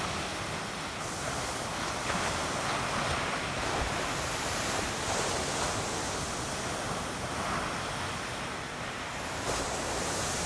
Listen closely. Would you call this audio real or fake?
real